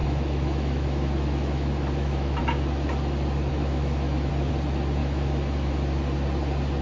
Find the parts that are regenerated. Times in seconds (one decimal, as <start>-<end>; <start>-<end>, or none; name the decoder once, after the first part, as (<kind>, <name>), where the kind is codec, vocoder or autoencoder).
0.0-2.4 (autoencoder, DAC-VAE); 3.5-4.3; 5.0-5.7